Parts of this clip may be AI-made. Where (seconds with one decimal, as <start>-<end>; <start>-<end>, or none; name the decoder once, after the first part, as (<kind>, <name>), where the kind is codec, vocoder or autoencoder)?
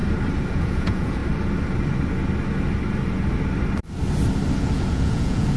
0.5-1.2 (vocoder, Vocos); 4.6-5.6